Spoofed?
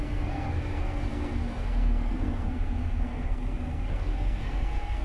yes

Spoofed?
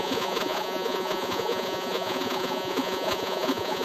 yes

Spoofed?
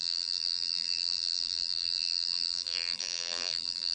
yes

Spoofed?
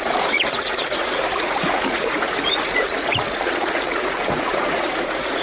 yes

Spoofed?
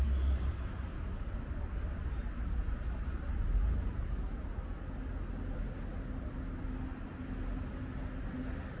no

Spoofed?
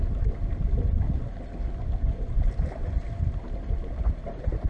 no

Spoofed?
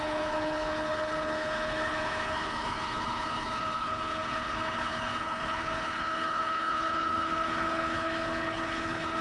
yes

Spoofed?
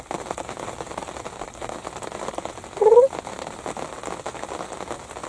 no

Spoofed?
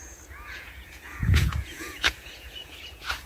yes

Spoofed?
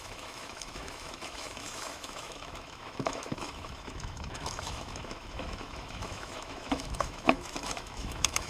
yes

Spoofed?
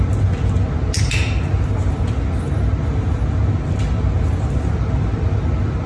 no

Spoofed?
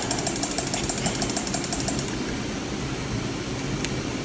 no